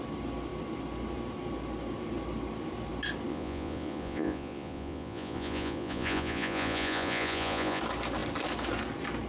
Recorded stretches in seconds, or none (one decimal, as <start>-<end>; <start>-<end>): 0.0-3.3; 7.8-9.3